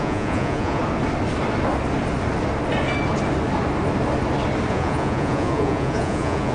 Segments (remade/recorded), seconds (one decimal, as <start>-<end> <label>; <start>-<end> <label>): 0.0-0.8 remade; 0.8-4.7 recorded; 4.7-6.5 remade